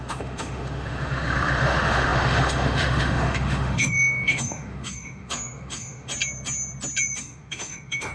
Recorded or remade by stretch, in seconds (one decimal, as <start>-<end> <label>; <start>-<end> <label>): 0.0-6.1 remade; 6.1-7.2 recorded; 7.2-8.1 remade